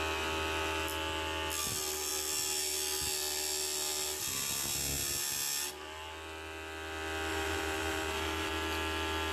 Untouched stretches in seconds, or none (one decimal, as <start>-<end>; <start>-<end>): 0.0-7.3; 8.5-9.3